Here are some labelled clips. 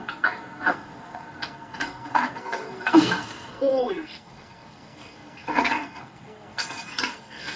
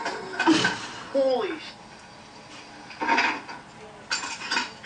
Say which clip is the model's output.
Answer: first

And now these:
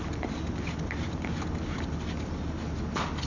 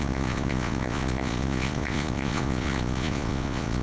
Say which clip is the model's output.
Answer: second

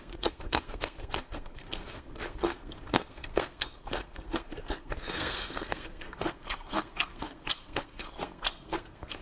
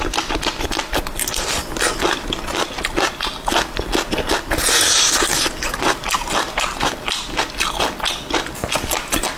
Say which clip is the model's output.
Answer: first